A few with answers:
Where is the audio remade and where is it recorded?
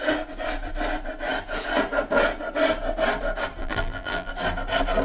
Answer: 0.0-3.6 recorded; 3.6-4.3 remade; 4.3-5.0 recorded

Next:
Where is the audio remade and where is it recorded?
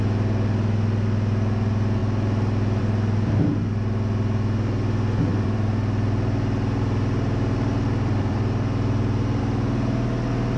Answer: 0.0-5.3 recorded; 5.3-9.4 remade; 9.4-10.6 recorded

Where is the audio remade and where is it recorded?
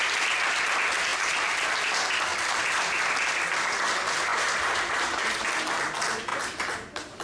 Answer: 0.0-2.3 recorded; 2.3-3.0 remade; 3.0-4.3 recorded; 4.3-5.4 remade; 5.4-6.3 recorded; 6.3-7.2 remade